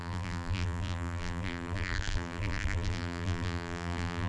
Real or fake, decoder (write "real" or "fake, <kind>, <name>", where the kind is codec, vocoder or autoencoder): fake, vocoder, BigVGAN v2